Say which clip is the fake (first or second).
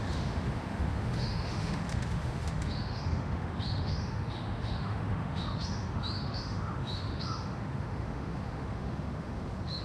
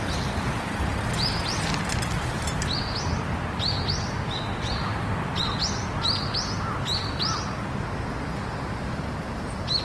first